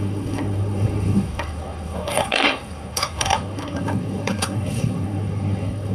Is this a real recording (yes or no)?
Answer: no